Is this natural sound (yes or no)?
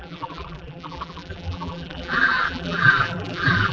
no